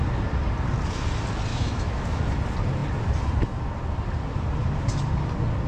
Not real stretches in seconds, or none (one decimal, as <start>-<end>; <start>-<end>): 1.5-2.2